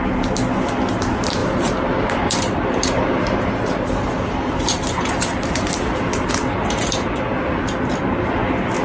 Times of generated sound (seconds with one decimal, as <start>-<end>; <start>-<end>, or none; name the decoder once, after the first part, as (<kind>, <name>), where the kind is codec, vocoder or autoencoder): 1.4-6.3 (vocoder, BigVGAN v2)